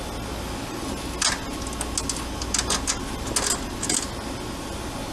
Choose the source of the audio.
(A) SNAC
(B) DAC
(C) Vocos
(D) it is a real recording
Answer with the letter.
D